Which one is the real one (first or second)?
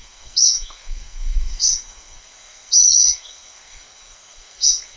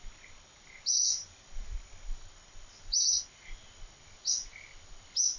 second